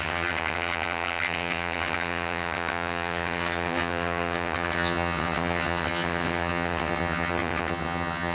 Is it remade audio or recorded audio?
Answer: remade